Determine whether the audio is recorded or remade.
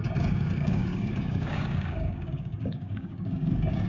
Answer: remade